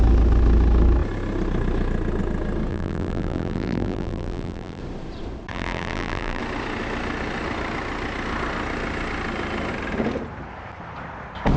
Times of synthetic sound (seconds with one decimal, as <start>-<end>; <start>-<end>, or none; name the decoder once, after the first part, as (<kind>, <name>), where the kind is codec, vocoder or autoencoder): 2.7-4.8 (vocoder, BigVGAN v2); 5.5-6.4